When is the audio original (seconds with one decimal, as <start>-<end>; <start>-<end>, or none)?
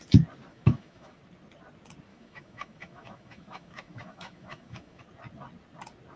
0.0-0.5; 1.2-2.1; 5.0-6.2